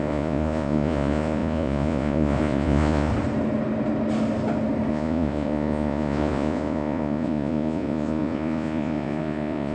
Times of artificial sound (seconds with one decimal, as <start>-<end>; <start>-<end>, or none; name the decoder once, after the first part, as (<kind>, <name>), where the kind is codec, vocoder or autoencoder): 0.0-3.1 (vocoder, Vocos); 4.9-9.7